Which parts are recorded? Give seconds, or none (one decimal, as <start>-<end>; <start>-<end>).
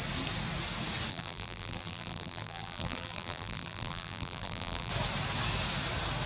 0.0-1.1; 4.9-6.3